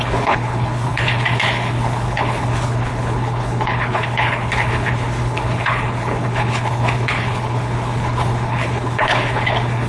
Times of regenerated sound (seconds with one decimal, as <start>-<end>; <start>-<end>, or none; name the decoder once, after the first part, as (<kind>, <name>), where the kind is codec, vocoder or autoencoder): 0.0-9.9 (codec, HILCodec)